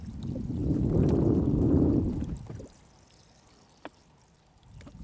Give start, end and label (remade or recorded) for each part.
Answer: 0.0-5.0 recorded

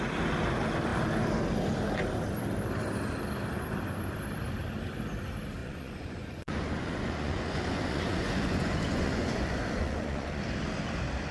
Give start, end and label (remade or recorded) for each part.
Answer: 0.0-5.6 recorded; 5.6-10.4 remade; 10.4-11.3 recorded

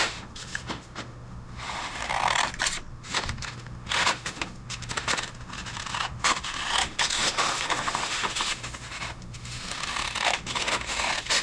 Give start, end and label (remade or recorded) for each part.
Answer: 0.0-2.1 remade; 2.1-2.9 recorded; 2.9-11.4 remade

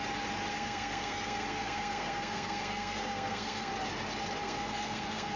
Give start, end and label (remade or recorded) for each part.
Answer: 0.0-0.5 recorded; 0.5-3.7 remade; 3.7-4.4 recorded; 4.4-5.4 remade

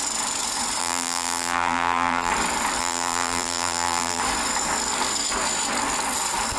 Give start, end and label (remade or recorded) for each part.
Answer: 0.0-0.8 recorded; 0.8-2.3 remade; 2.3-2.8 recorded; 2.8-4.2 remade; 4.2-6.6 recorded

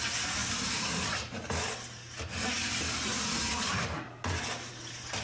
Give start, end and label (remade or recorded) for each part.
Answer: 0.0-5.2 recorded

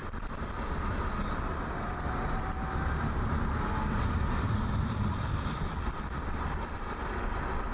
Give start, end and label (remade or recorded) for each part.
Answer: 0.0-7.7 recorded